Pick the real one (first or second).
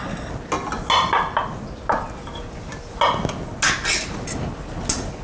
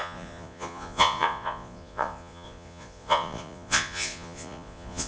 first